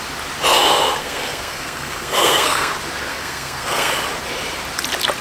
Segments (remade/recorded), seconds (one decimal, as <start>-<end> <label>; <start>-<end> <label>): 0.0-1.0 recorded; 1.0-2.7 remade; 2.7-3.1 recorded; 3.1-3.9 remade; 3.9-5.2 recorded